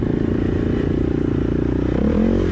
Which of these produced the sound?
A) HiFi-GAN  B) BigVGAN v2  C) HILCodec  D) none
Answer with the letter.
D